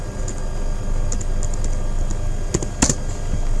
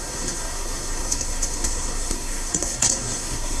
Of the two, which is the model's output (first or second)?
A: second